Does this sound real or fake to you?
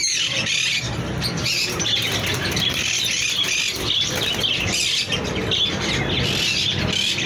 real